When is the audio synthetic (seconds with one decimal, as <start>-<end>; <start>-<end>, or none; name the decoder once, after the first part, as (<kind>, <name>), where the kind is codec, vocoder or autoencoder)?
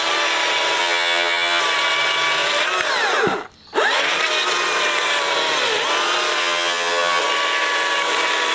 0.8-1.6 (vocoder, HiFi-GAN); 6.4-7.2